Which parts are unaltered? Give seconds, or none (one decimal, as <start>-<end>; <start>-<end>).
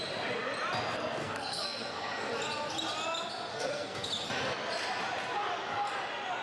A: 0.0-1.2; 2.3-3.5; 4.1-6.4